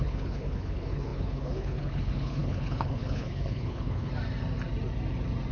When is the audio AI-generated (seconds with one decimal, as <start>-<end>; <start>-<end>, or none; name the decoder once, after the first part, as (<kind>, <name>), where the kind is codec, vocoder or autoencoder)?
0.0-4.1 (codec, HILCodec)

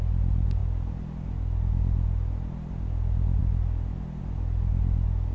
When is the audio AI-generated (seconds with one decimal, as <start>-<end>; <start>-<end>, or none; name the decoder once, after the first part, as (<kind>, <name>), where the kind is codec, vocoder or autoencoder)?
none

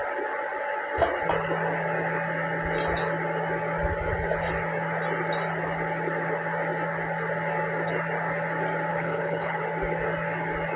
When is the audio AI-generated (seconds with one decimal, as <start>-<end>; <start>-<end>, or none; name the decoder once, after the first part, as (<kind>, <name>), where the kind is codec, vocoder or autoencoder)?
8.9-9.6 (codec, HILCodec)

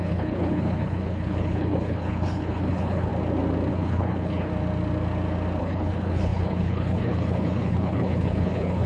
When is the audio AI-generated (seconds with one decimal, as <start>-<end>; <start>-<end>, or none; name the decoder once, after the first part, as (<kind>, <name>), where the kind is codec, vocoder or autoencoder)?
0.0-3.1 (codec, HILCodec); 3.7-4.5; 5.6-8.9

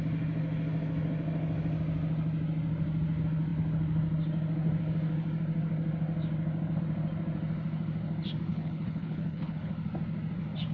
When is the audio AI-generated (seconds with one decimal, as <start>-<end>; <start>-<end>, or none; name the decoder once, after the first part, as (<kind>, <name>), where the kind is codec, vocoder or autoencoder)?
8.5-9.7 (codec, HILCodec)

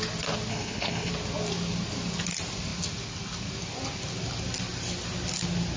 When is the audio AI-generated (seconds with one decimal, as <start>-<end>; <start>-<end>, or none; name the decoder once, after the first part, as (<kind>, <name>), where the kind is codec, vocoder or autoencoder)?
0.5-1.1 (codec, HILCodec)